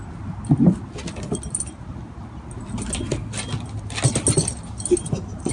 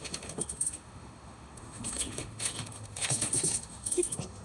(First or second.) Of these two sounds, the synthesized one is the second